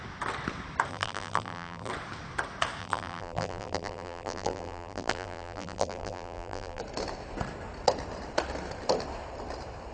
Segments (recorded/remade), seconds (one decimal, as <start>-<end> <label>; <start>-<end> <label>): 0.0-0.9 recorded; 0.9-1.9 remade; 1.9-2.8 recorded; 2.8-6.8 remade; 6.8-9.9 recorded